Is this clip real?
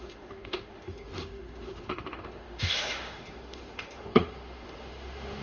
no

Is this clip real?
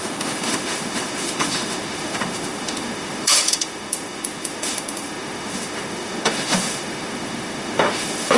no